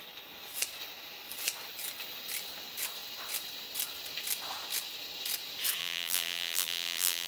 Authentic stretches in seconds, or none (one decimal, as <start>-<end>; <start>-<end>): 0.0-5.8